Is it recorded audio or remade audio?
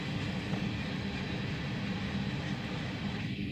recorded